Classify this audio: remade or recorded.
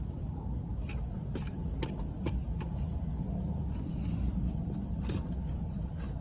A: recorded